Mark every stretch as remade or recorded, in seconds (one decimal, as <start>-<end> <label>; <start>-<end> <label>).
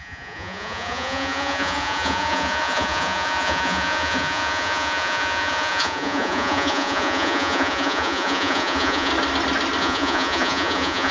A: 0.0-9.1 remade; 9.1-9.8 recorded; 9.8-11.1 remade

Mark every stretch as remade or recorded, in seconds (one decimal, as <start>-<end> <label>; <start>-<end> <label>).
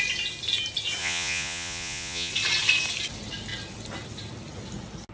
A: 0.0-1.0 recorded; 1.0-2.3 remade; 2.3-5.1 recorded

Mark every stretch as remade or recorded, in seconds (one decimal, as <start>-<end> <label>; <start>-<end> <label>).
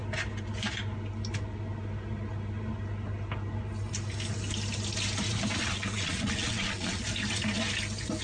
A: 0.0-5.6 recorded; 5.6-7.0 remade; 7.0-8.2 recorded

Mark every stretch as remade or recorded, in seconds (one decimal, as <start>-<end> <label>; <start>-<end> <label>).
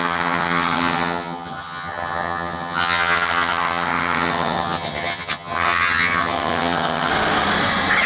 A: 0.0-7.1 remade; 7.1-8.1 recorded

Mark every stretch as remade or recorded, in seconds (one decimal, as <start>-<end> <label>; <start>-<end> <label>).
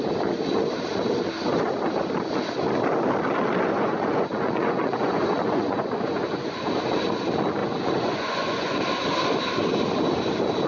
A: 0.0-3.7 recorded; 3.7-6.8 remade; 6.8-7.6 recorded; 7.6-8.8 remade; 8.8-10.7 recorded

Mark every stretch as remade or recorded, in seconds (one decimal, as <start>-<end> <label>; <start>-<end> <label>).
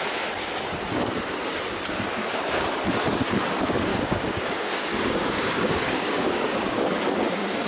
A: 0.0-3.9 recorded; 3.9-6.8 remade; 6.8-7.7 recorded